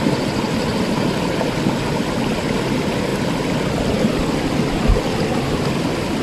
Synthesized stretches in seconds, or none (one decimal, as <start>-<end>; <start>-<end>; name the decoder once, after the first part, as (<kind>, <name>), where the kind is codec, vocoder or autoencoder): none